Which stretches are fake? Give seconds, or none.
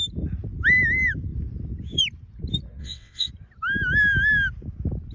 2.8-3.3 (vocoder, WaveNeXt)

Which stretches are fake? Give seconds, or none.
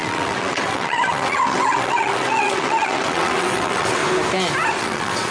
0.0-4.0 (vocoder, WaveNeXt); 4.7-5.3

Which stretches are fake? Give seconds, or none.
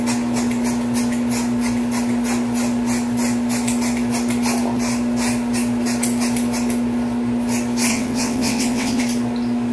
7.9-9.0 (vocoder, WaveNeXt)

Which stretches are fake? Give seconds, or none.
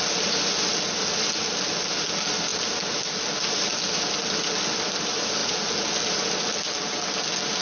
none